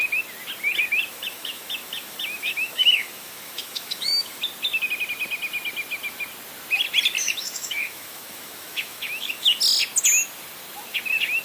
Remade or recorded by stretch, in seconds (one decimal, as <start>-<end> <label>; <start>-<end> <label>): 0.0-1.1 recorded; 1.1-4.4 remade; 4.4-7.2 recorded; 7.2-9.6 remade; 9.6-11.4 recorded